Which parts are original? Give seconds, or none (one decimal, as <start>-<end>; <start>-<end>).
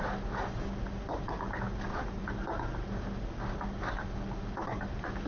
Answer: 0.0-5.3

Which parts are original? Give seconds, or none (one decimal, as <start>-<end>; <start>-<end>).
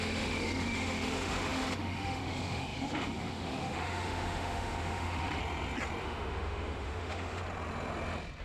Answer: 5.4-6.0; 7.4-8.4